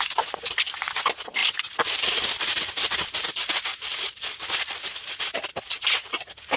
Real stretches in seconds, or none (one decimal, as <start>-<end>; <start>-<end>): 0.0-1.4; 5.1-5.5; 6.1-6.6